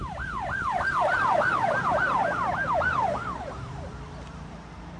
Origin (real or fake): fake